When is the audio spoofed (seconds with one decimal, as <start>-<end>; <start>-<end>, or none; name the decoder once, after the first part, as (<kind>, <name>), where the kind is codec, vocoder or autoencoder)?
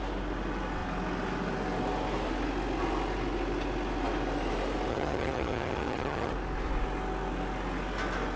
4.9-6.3 (vocoder, HiFi-GAN)